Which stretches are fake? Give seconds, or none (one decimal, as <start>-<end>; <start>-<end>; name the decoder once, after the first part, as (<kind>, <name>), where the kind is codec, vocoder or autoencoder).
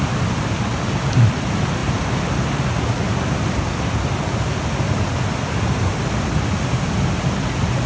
none